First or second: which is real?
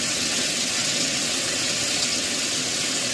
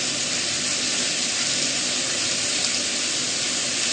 second